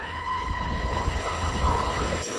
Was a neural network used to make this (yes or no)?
yes